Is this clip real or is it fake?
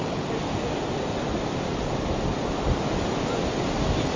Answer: real